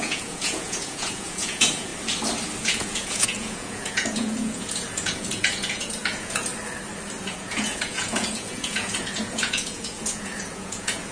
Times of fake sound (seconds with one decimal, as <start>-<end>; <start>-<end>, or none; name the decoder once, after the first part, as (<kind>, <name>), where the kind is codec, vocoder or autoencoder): 0.0-1.9 (vocoder, Vocos); 2.6-6.5; 7.2-11.1